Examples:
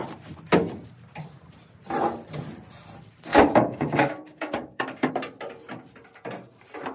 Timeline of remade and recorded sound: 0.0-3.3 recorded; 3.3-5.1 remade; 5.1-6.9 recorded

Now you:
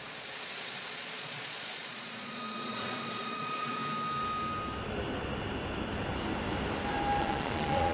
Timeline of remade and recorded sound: 0.0-3.8 remade; 3.8-7.2 recorded; 7.2-7.9 remade

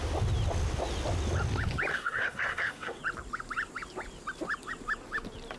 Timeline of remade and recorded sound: 0.0-1.9 recorded; 1.9-3.0 remade; 3.0-5.6 recorded

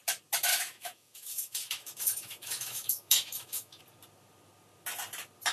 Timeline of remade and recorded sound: 0.0-0.5 recorded; 0.5-3.8 remade; 3.8-5.5 recorded